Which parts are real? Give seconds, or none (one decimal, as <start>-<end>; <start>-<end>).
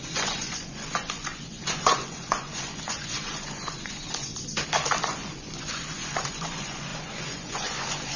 4.3-5.0